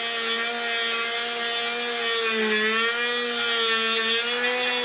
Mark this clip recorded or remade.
recorded